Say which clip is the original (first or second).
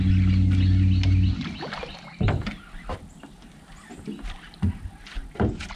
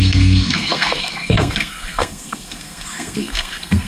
first